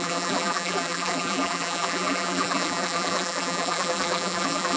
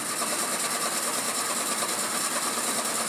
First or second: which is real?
second